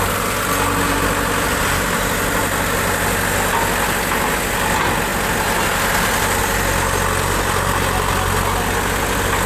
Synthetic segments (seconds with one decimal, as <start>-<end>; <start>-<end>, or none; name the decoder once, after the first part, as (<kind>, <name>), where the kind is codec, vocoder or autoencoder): none